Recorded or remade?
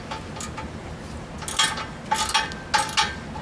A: recorded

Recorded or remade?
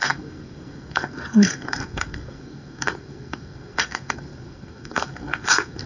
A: remade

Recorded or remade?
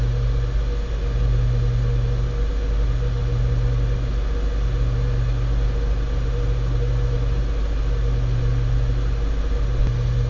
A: recorded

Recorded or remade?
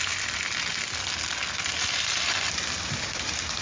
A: recorded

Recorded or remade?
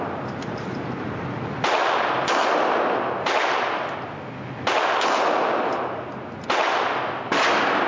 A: recorded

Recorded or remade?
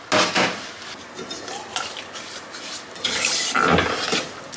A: recorded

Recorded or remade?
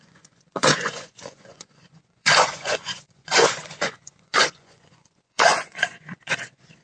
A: remade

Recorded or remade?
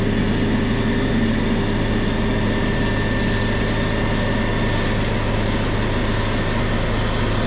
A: recorded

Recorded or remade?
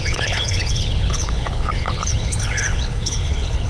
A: remade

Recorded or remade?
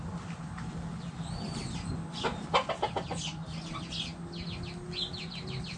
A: recorded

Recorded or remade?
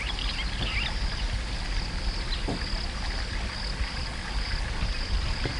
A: recorded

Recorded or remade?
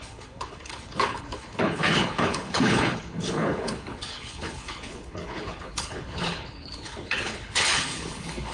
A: remade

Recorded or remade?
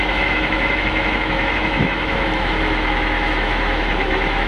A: remade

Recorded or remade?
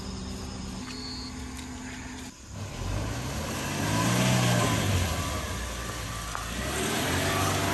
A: recorded